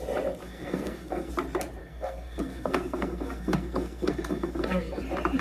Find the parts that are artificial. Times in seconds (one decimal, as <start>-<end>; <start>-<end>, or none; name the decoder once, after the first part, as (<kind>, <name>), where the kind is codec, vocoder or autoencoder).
0.4-1.3 (codec, SNAC); 1.8-5.0